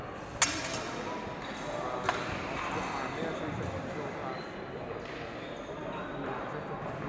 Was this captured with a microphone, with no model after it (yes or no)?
yes